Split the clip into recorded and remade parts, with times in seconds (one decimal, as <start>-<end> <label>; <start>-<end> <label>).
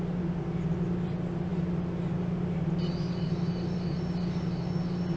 0.0-5.2 recorded